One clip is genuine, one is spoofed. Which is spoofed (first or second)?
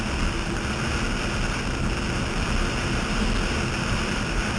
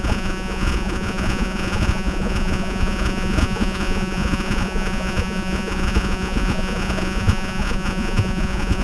second